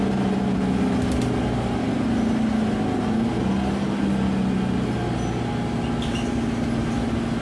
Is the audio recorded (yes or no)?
yes